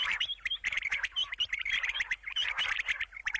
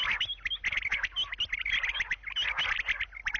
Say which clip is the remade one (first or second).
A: first